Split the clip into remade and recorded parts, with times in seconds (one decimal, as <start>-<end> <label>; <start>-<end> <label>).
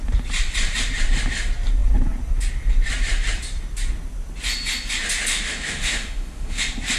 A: 0.0-5.3 recorded; 5.3-6.6 remade; 6.6-7.0 recorded